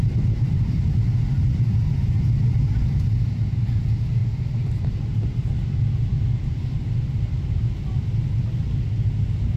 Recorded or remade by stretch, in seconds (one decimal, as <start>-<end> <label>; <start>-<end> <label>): 0.0-9.6 recorded